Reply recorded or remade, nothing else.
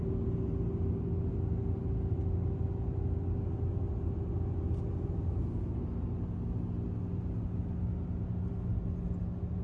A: recorded